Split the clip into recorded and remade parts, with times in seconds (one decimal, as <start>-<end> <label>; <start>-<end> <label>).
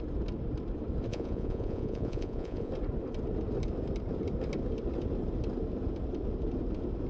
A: 0.0-1.1 recorded; 1.1-2.7 remade; 2.7-7.1 recorded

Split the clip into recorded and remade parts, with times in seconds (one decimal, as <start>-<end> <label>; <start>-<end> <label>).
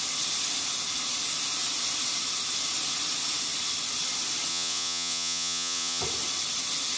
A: 0.0-4.5 recorded; 4.5-6.0 remade; 6.0-7.0 recorded